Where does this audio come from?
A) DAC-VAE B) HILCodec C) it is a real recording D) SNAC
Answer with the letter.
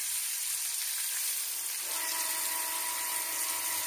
C